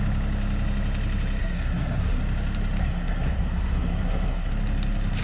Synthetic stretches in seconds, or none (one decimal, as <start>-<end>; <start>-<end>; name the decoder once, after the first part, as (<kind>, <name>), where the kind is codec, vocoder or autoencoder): 1.4-2.2 (codec, SNAC); 2.8-4.5